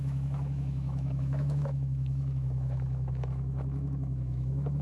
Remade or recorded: remade